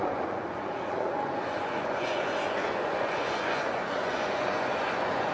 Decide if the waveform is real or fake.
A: fake